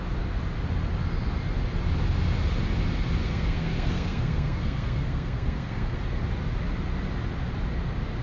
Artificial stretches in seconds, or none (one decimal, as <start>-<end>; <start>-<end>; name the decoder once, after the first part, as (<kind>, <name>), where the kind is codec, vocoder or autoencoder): 3.2-6.0 (codec, SNAC)